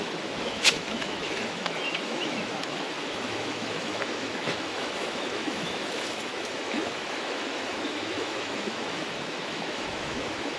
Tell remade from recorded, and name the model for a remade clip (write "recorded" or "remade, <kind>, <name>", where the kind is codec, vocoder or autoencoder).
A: remade, autoencoder, DAC-VAE